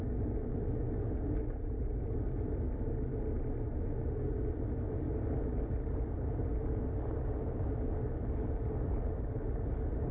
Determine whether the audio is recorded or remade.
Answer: recorded